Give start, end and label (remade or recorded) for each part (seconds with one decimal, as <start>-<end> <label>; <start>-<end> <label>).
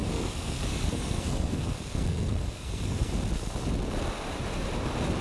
0.0-3.1 remade; 3.1-5.2 recorded